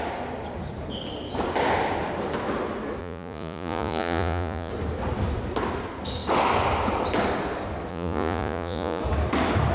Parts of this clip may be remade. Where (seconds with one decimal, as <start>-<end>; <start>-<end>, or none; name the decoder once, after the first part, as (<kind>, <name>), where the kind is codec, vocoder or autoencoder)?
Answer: 3.0-4.7 (vocoder, Vocos); 7.9-9.0